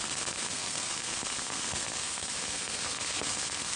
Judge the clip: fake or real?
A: fake